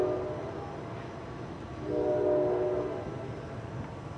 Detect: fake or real real